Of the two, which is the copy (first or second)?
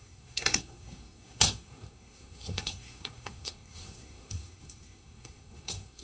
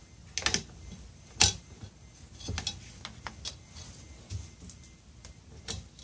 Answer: first